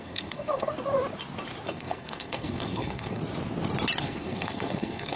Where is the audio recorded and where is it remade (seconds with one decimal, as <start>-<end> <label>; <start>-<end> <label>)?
0.0-0.7 remade; 0.7-1.7 recorded; 1.7-3.2 remade; 3.2-4.0 recorded; 4.0-5.2 remade